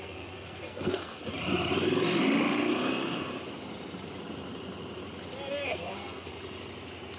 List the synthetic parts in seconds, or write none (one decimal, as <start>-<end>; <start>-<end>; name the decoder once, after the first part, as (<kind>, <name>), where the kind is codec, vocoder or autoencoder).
0.0-1.2 (codec, SNAC); 5.5-6.3